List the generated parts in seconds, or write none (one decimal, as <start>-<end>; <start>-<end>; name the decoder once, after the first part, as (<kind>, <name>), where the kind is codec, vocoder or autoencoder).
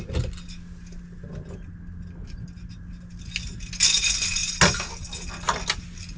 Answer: none